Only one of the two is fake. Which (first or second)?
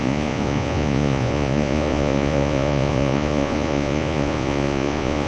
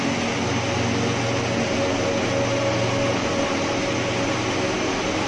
first